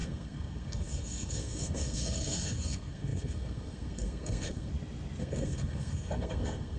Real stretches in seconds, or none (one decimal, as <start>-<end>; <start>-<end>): 4.7-5.2